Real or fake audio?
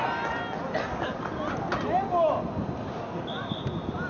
real